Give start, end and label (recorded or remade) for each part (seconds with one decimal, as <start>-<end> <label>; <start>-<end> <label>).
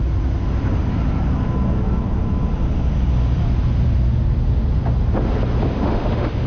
0.0-5.7 recorded; 5.7-6.5 remade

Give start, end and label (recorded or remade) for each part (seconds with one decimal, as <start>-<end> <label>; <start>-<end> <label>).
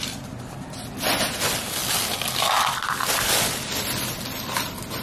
0.0-5.0 recorded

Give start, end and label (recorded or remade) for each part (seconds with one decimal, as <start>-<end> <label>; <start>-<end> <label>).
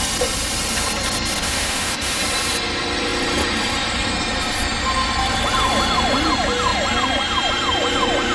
0.0-1.4 recorded; 1.4-2.2 remade; 2.2-8.3 recorded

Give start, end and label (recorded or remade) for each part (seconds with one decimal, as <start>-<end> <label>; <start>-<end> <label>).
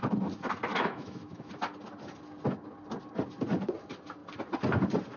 0.0-0.7 recorded; 0.7-1.5 remade; 1.5-5.2 recorded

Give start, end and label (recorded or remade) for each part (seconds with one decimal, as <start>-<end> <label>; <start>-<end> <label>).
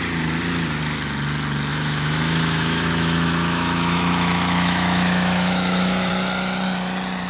0.0-1.7 recorded; 1.7-6.1 remade; 6.1-7.3 recorded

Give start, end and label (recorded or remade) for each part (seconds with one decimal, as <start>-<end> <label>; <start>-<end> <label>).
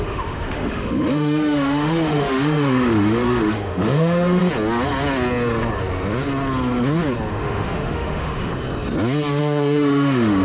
0.0-4.4 remade; 4.4-7.3 recorded; 7.3-8.5 remade; 8.5-9.4 recorded; 9.4-10.4 remade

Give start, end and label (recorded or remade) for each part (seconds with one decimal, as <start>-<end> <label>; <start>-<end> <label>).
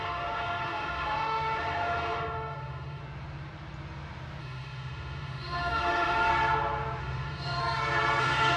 0.0-3.0 remade; 3.0-4.4 recorded; 4.4-6.3 remade; 6.3-7.0 recorded; 7.0-7.6 remade; 7.6-8.2 recorded; 8.2-8.6 remade